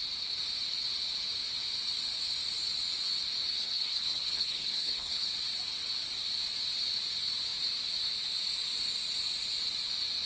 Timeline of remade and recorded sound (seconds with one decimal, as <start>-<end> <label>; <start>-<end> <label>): 0.0-3.5 recorded; 3.5-5.3 remade; 5.3-10.3 recorded